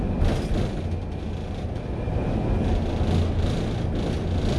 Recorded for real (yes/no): yes